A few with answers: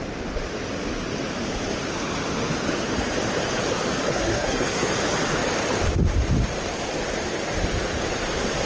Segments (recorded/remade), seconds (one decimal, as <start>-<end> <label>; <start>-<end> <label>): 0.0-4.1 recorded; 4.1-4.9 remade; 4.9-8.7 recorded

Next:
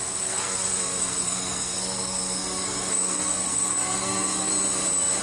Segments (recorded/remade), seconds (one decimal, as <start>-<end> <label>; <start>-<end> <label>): 0.0-4.5 remade; 4.5-5.2 recorded

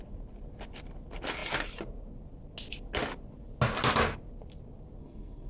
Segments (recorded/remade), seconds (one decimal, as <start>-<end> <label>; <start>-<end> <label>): 0.0-5.0 recorded; 5.0-5.5 remade

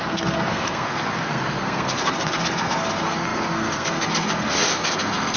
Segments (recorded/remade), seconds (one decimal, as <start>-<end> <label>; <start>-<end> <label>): 0.0-5.4 remade

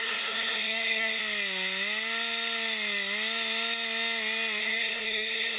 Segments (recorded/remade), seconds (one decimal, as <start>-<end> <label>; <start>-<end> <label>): 0.0-1.2 remade; 1.2-4.6 recorded; 4.6-5.6 remade

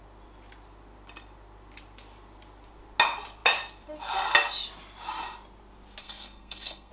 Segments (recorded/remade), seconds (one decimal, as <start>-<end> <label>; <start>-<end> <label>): 0.0-6.0 recorded; 6.0-6.9 remade